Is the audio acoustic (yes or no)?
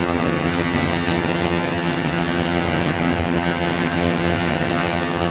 no